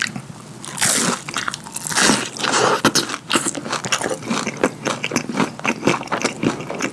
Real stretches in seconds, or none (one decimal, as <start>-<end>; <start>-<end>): 0.0-6.9